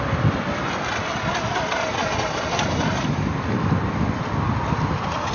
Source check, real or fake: real